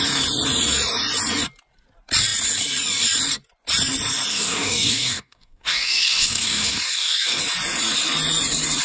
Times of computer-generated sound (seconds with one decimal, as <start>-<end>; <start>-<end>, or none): 4.3-7.4